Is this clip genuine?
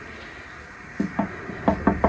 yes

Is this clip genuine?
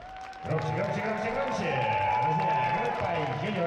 yes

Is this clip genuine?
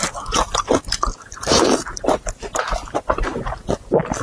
yes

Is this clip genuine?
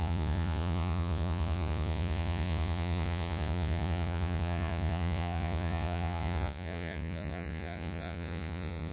no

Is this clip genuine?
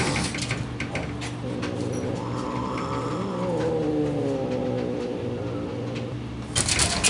yes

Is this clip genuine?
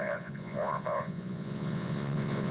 no